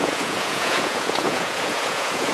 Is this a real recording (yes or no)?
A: no